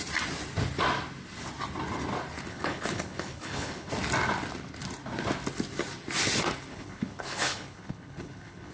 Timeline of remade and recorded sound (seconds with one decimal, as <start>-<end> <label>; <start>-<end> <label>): 0.0-2.5 recorded; 2.5-3.9 remade; 3.9-6.7 recorded; 6.7-8.7 remade